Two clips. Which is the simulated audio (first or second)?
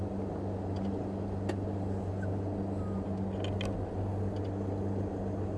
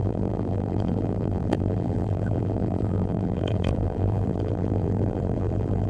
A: second